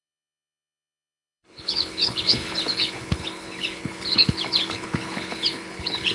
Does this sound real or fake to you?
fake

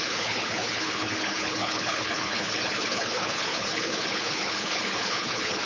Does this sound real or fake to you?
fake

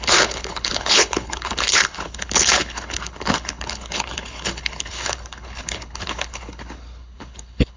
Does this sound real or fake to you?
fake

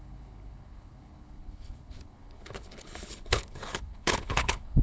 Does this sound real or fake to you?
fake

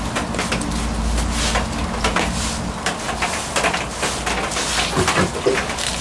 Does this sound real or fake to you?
real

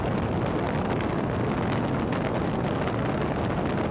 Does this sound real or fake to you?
real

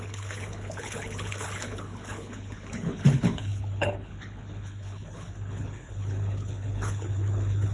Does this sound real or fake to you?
fake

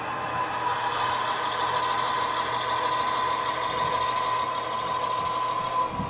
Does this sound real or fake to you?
real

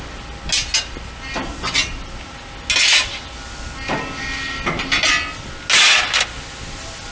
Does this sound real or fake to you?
real